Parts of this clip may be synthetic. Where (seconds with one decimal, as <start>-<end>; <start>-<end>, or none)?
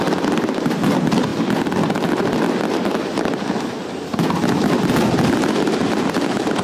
none